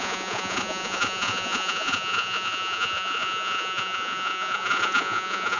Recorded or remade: remade